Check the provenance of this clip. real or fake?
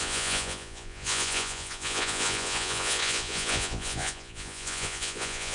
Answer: fake